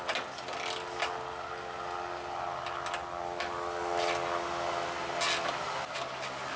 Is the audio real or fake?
real